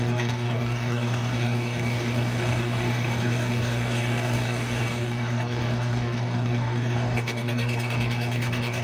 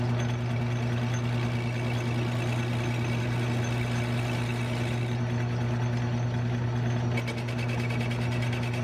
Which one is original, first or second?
second